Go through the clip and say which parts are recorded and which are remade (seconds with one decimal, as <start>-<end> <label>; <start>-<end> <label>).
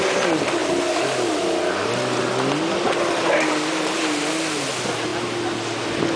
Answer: 0.0-6.2 recorded